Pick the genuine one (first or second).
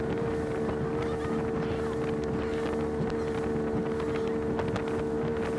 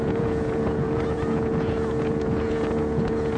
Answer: first